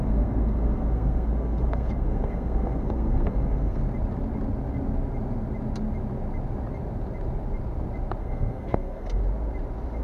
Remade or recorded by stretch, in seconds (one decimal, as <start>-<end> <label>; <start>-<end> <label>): 0.0-3.8 remade; 3.8-8.2 recorded; 8.2-9.2 remade; 9.2-10.0 recorded